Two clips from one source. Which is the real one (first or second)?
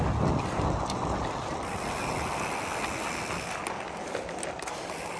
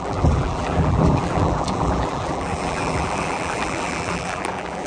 first